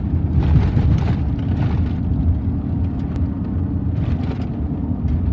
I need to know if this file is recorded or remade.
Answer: recorded